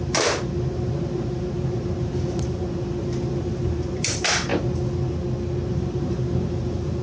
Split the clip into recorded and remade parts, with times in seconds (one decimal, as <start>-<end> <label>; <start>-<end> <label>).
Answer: 0.0-4.5 remade; 4.5-5.7 recorded; 5.7-7.0 remade

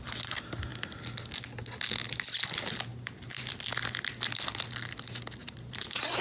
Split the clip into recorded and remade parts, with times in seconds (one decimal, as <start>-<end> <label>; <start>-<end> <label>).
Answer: 0.0-2.9 recorded; 2.9-3.5 remade; 3.5-5.4 recorded; 5.4-6.2 remade

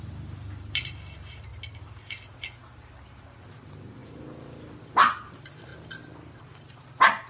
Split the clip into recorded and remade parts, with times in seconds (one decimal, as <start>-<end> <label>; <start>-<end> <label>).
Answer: 0.0-1.5 remade; 1.5-2.6 recorded; 2.6-4.0 remade; 4.0-4.9 recorded; 4.9-5.7 remade; 5.7-6.4 recorded; 6.4-7.3 remade

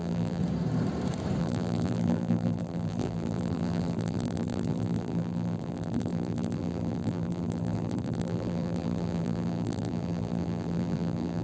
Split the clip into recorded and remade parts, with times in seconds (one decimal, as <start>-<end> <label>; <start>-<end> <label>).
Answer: 0.0-0.4 remade; 0.4-1.4 recorded; 1.4-11.4 remade

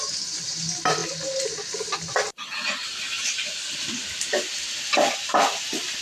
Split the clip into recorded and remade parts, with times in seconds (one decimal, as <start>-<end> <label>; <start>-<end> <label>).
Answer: 0.0-2.3 recorded; 2.3-2.9 remade; 2.9-6.0 recorded